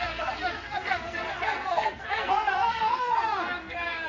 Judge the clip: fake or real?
fake